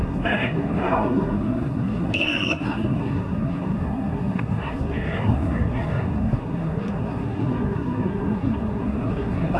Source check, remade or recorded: remade